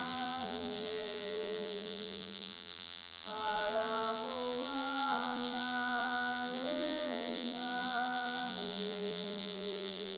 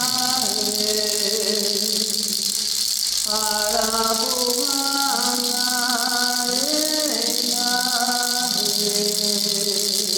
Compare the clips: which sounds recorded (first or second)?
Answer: second